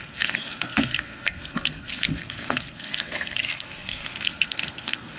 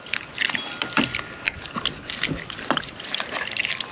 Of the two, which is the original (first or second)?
second